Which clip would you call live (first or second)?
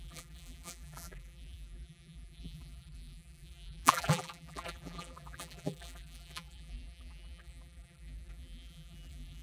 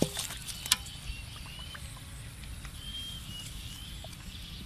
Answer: second